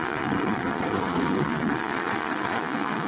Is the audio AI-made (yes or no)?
yes